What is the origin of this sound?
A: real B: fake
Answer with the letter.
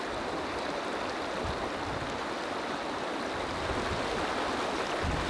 A